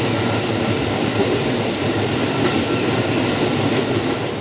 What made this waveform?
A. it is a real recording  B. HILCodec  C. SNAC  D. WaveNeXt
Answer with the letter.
A